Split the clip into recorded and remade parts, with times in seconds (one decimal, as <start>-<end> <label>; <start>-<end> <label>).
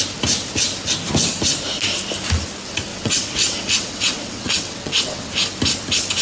0.0-2.9 recorded; 2.9-5.3 remade; 5.3-6.2 recorded